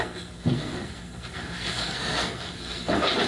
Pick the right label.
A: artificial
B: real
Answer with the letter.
A